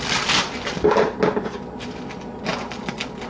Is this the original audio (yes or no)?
yes